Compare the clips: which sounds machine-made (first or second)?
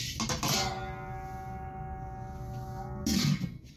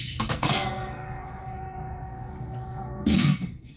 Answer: second